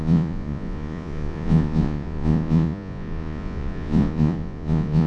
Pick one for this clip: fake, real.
fake